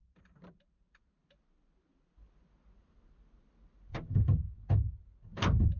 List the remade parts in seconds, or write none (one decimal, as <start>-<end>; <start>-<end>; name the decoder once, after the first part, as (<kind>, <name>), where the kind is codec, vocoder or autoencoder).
0.0-1.2 (vocoder, BigVGAN v2); 4.7-5.8